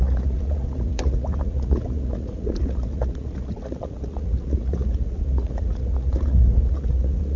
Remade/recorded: remade